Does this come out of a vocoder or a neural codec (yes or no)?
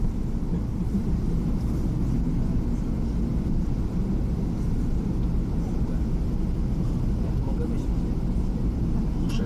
no